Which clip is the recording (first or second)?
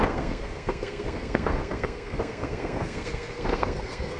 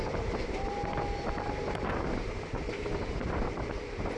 second